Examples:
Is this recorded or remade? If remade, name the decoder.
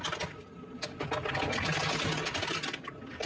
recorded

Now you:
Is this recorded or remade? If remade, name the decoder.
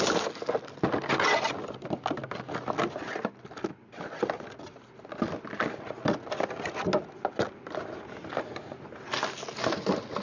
recorded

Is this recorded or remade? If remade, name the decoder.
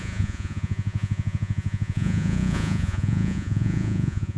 remade, vocoder, Vocos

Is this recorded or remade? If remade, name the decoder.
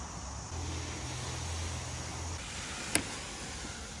recorded